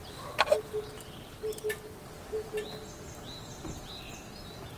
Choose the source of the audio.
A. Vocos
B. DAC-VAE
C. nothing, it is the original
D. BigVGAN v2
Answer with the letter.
C